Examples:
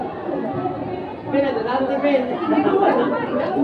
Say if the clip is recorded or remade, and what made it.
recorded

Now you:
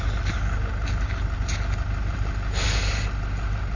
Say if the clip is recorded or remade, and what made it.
recorded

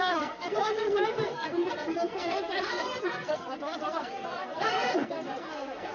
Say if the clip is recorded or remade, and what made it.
remade, codec, SNAC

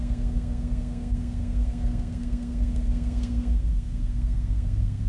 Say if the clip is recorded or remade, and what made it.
remade, codec, SNAC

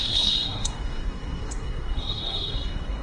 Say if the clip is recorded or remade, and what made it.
remade, codec, SNAC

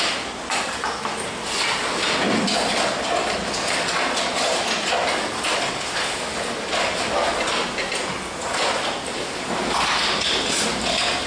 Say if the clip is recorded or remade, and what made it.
recorded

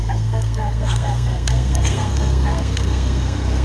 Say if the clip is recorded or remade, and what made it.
remade, codec, SNAC